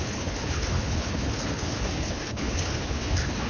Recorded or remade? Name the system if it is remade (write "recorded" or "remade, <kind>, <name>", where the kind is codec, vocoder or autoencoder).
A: remade, codec, HILCodec